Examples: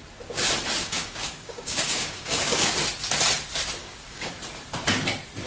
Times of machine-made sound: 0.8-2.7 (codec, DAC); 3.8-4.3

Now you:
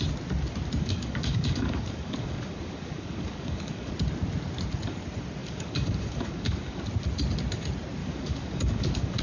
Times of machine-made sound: 0.8-3.9 (codec, DAC); 5.4-6.8; 8.0-9.2